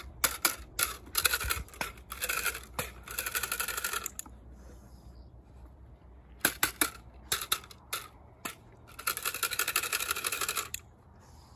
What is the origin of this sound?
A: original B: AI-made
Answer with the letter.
A